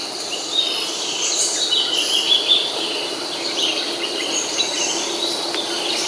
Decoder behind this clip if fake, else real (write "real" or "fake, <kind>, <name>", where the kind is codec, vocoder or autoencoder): real